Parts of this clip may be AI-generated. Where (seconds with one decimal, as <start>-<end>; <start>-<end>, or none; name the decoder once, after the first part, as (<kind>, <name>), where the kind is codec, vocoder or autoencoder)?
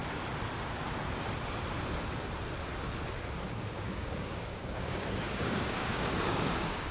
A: 3.5-6.9 (codec, DAC)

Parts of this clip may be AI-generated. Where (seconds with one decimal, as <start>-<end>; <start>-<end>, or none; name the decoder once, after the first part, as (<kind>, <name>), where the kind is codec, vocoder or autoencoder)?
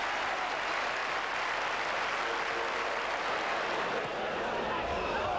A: none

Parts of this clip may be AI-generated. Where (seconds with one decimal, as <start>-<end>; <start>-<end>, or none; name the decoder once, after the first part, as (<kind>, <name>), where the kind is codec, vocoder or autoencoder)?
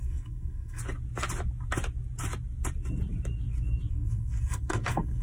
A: 0.0-0.8 (codec, SNAC); 3.9-5.2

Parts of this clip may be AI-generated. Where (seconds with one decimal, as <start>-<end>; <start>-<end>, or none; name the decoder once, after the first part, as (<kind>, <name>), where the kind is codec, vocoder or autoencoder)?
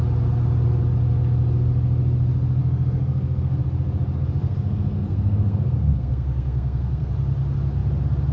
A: 2.6-3.6 (codec, SNAC); 4.4-7.1